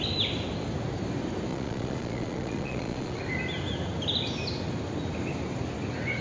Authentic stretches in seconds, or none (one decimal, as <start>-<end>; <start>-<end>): 0.0-1.5; 3.2-6.2